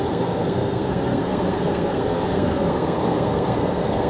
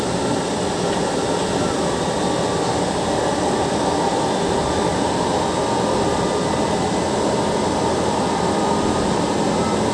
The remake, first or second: first